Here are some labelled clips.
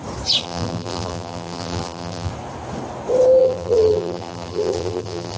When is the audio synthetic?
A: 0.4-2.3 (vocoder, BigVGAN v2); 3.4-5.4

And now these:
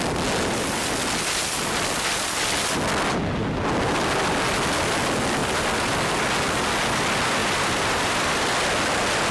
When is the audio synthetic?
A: 5.4-6.3 (vocoder, BigVGAN v2); 7.4-8.5

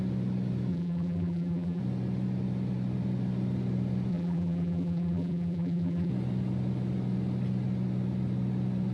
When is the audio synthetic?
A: 0.7-1.8 (vocoder, BigVGAN v2); 4.1-6.1

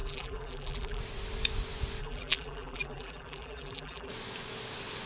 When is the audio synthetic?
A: 0.0-1.0 (vocoder, BigVGAN v2); 2.0-4.1

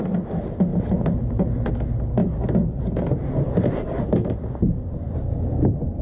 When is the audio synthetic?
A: 0.7-1.7 (vocoder, BigVGAN v2)

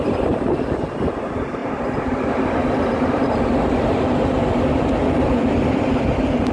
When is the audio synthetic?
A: 1.6-5.5 (vocoder, BigVGAN v2)

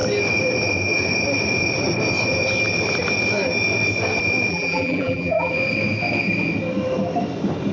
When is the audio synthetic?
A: 4.5-5.5 (vocoder, BigVGAN v2)